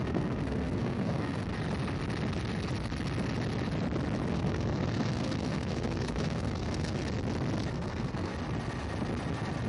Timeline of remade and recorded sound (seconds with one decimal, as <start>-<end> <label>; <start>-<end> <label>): 0.0-1.5 remade; 1.5-4.3 recorded; 4.3-7.0 remade; 7.0-7.7 recorded; 7.7-8.3 remade; 8.3-9.7 recorded